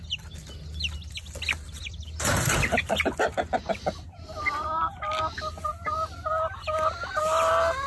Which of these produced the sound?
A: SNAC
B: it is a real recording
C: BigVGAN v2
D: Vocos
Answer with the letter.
B